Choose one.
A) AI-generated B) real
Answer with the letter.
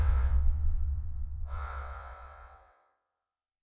A